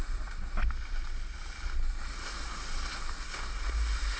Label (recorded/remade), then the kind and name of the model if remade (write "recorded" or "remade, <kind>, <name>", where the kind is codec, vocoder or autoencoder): recorded